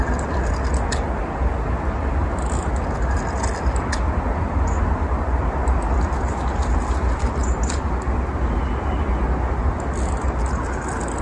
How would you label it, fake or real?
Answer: real